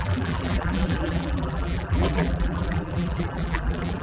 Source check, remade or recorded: remade